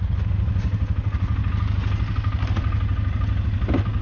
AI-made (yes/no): no